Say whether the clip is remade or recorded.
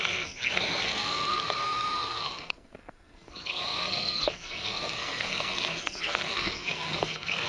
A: remade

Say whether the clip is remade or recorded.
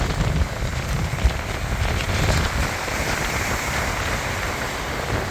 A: recorded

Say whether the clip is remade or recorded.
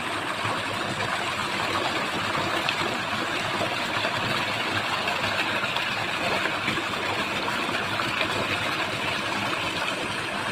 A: recorded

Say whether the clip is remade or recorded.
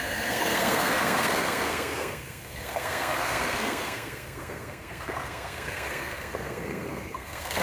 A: remade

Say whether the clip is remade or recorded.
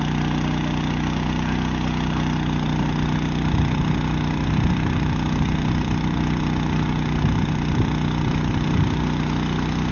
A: recorded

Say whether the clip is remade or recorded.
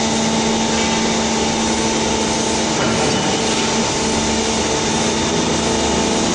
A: recorded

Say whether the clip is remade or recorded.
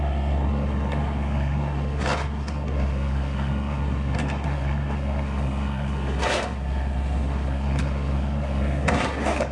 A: remade